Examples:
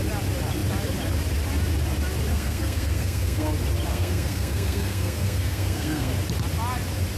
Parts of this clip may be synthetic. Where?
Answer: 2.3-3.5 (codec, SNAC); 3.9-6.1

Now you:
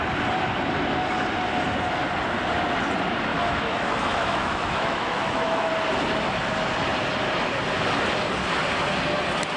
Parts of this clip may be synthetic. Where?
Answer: 3.3-5.7 (autoencoder, DAC-VAE)

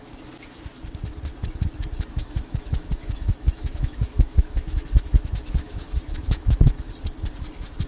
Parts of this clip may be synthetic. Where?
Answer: 2.2-6.9 (autoencoder, DAC-VAE)

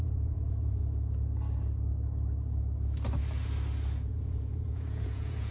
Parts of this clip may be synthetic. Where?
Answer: 0.0-0.8 (vocoder, Vocos); 4.1-5.5

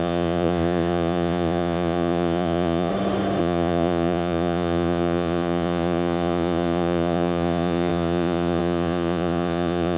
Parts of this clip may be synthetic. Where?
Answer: 0.0-2.9 (vocoder, Vocos); 3.4-10.0

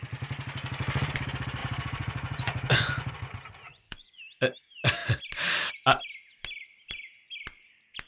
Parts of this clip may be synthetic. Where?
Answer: 1.6-3.1 (vocoder, Vocos); 3.7-4.2